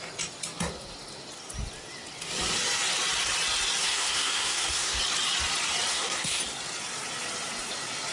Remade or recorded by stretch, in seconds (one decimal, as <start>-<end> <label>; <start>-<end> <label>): 0.0-3.8 recorded; 3.8-5.0 remade; 5.0-5.9 recorded; 5.9-6.4 remade; 6.4-8.1 recorded